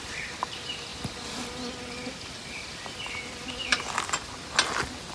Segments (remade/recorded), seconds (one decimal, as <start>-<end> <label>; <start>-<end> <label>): 0.0-5.1 recorded